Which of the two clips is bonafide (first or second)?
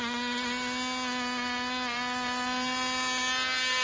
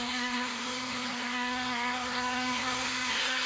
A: first